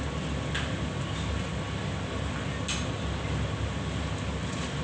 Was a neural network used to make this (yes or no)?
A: no